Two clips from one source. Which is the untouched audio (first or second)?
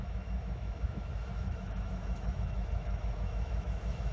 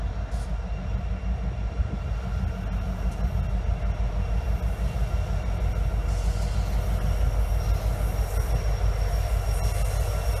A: second